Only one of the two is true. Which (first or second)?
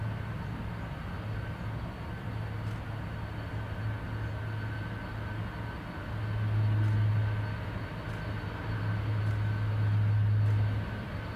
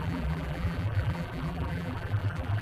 first